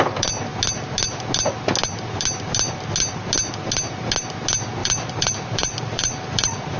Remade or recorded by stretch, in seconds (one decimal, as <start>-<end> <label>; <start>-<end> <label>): 0.0-4.8 recorded; 4.8-6.8 remade